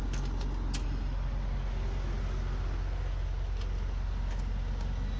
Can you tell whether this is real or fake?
real